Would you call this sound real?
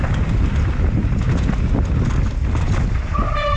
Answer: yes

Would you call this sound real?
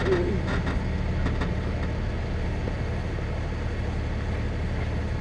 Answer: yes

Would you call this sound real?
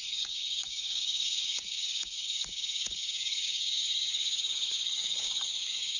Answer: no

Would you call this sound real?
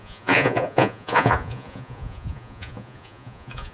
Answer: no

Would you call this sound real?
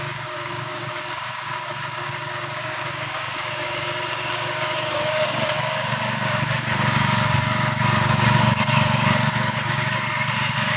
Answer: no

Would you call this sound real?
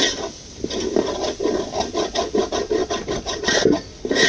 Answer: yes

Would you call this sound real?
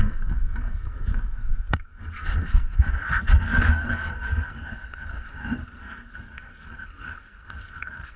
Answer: no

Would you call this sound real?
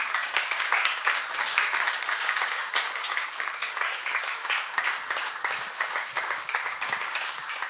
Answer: no